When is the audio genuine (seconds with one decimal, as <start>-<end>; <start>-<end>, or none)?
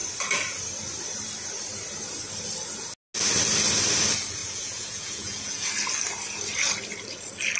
0.0-4.4; 5.7-7.6